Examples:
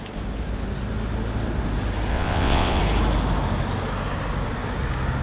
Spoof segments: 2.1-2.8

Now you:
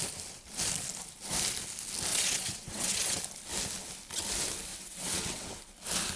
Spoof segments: 2.1-3.2; 4.7-5.6

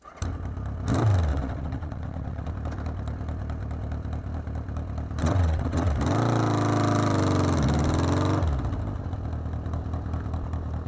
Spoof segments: 1.3-2.5; 5.2-5.9

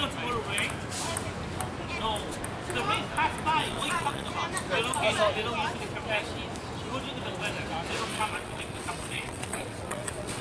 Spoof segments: 3.6-4.3; 8.1-10.4